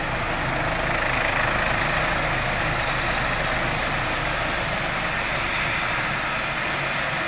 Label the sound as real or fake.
real